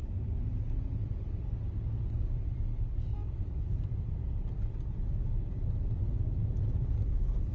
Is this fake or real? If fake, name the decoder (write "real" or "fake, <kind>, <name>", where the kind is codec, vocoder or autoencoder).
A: real